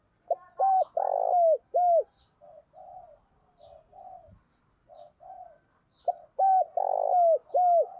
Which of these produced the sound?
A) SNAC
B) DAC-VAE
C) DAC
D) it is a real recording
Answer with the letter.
D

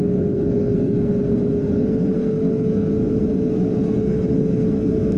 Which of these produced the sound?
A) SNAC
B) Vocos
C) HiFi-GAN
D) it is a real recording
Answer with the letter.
A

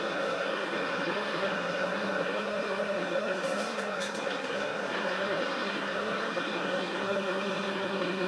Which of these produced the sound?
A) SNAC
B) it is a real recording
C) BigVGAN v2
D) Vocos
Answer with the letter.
A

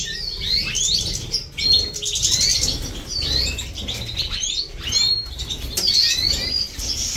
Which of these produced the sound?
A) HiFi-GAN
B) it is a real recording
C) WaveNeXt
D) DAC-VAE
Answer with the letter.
B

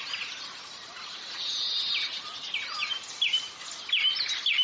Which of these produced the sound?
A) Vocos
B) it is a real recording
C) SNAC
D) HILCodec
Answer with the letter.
B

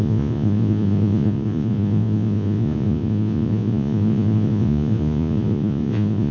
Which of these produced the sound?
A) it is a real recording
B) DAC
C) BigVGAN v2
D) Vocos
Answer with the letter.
D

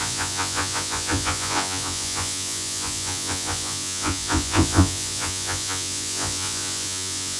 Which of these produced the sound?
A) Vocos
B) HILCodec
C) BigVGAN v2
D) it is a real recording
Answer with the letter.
A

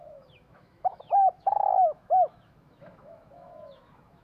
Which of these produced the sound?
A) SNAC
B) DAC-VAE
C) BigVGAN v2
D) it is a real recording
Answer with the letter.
B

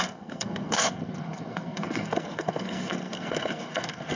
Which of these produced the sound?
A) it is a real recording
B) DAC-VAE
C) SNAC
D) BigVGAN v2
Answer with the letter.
C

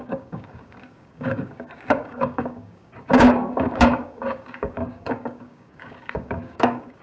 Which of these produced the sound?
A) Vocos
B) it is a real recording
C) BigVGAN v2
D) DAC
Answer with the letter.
D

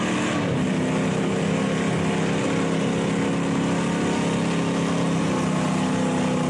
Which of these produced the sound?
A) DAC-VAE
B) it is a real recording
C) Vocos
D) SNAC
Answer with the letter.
B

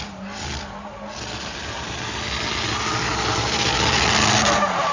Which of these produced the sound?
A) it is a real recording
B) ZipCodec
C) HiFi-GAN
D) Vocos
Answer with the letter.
A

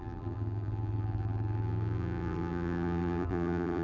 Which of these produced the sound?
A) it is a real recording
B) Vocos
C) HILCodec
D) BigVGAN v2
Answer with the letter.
D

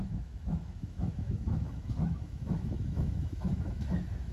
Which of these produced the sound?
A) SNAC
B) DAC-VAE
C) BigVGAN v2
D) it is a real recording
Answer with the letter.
B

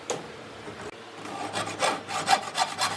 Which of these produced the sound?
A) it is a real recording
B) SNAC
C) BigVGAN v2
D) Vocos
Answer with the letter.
A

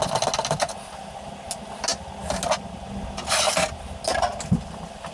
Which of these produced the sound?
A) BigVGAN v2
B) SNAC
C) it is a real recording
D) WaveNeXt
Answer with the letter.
C